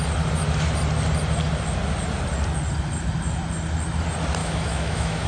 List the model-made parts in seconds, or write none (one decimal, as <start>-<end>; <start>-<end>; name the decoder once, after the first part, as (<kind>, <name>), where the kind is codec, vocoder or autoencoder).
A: 4.4-5.3 (autoencoder, DAC-VAE)